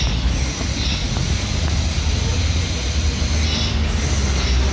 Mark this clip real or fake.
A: real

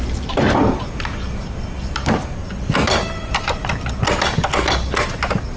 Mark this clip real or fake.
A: real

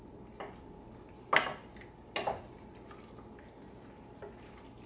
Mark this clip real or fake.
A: real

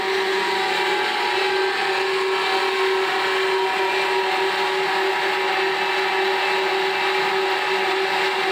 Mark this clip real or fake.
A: real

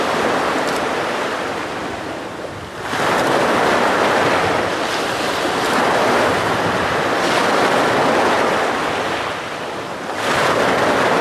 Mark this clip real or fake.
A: real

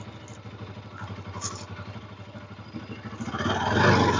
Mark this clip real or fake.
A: real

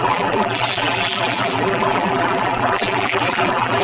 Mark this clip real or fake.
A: fake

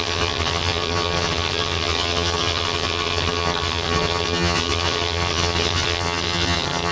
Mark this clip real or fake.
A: fake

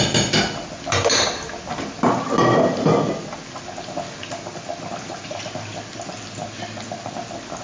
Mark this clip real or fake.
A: real